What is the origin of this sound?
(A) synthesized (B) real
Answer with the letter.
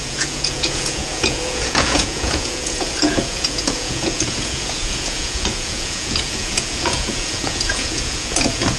A